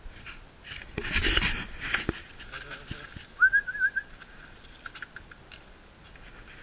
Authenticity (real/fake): real